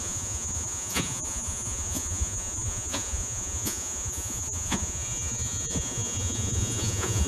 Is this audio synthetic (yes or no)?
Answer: yes